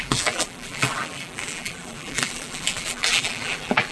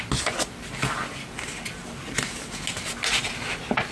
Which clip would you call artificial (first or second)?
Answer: first